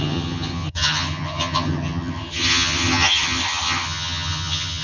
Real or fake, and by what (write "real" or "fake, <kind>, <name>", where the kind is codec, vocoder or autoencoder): fake, vocoder, HiFi-GAN